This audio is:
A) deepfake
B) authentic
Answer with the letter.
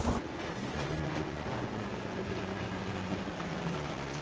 A